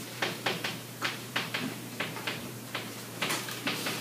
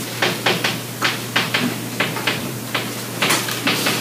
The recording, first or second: second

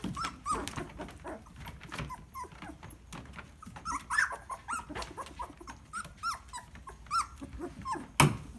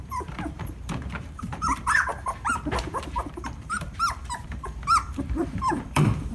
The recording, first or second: first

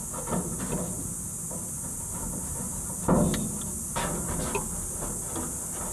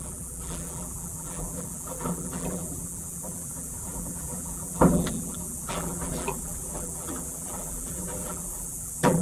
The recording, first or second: first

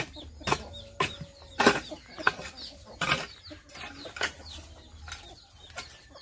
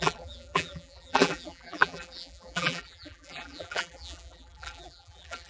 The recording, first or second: first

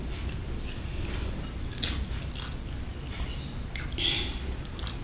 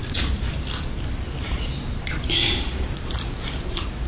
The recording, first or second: first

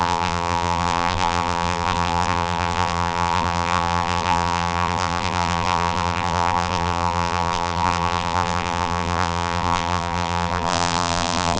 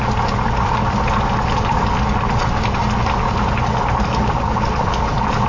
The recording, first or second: second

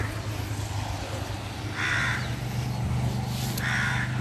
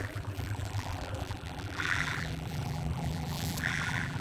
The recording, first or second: first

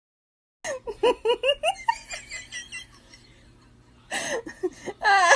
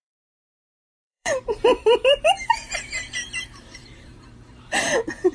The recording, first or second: first